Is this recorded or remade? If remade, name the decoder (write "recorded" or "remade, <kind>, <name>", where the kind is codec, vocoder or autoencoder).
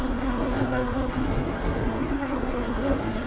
remade, codec, SNAC